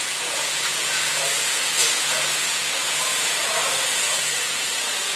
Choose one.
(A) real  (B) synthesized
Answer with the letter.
B